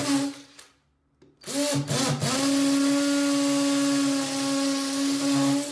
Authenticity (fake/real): real